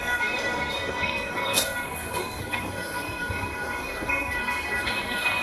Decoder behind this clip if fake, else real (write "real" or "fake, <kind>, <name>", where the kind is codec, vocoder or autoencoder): fake, codec, SNAC